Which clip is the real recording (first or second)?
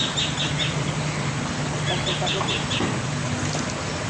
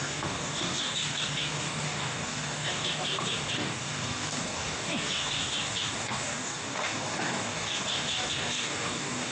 first